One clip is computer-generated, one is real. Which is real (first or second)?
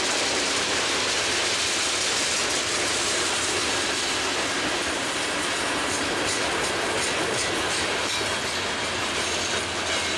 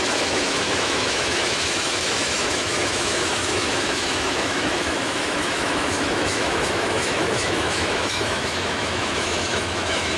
first